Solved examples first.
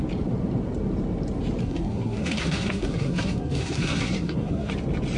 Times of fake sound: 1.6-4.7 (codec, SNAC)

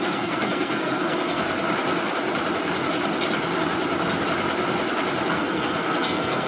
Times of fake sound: 0.0-1.4 (codec, SNAC); 5.3-6.5

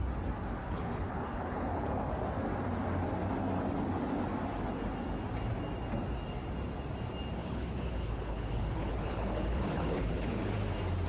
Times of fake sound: 0.6-1.9 (codec, HILCodec); 7.4-10.5

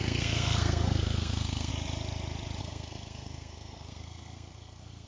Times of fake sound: 0.0-1.7 (codec, SNAC); 2.6-5.1

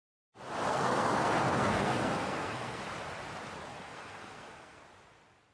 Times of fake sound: 0.7-2.8 (codec, SNAC); 3.7-4.8

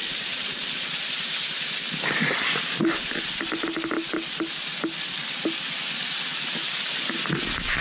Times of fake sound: 0.0-1.0 (vocoder, WaveNeXt)

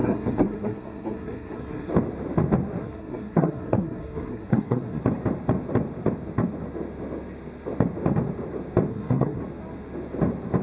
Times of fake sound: 0.0-1.9 (codec, SNAC); 2.8-5.0; 8.9-9.4

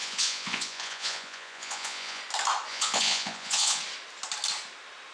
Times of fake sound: 0.0-2.2 (vocoder, Vocos); 2.7-3.8